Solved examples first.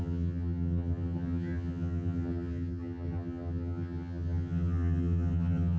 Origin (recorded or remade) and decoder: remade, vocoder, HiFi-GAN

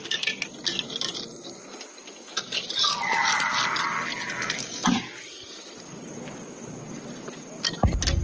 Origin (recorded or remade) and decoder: recorded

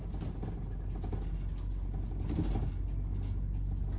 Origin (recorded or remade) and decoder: recorded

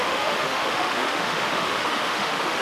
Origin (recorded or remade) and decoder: remade, autoencoder, DAC-VAE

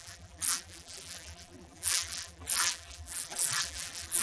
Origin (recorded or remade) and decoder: remade, vocoder, BigVGAN v2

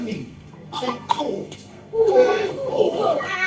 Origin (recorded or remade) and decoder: remade, codec, SNAC